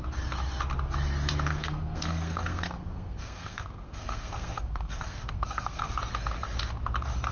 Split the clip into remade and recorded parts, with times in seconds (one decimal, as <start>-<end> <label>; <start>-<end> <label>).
0.0-1.5 recorded; 1.5-5.9 remade; 5.9-7.3 recorded

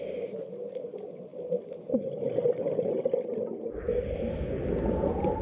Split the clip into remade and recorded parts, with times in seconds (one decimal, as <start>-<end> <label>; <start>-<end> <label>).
0.0-5.4 recorded

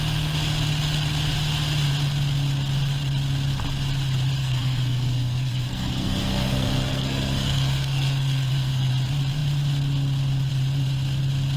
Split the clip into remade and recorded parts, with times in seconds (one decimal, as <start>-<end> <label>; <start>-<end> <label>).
0.0-4.4 recorded; 4.4-8.9 remade; 8.9-11.6 recorded

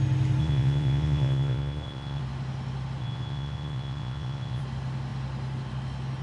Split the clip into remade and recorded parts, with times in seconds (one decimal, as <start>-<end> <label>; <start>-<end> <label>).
0.0-0.4 recorded; 0.4-2.2 remade; 2.2-3.0 recorded; 3.0-4.6 remade; 4.6-6.2 recorded

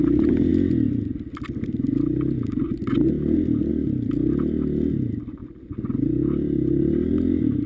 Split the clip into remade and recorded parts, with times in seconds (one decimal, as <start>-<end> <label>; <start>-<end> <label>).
0.0-7.7 recorded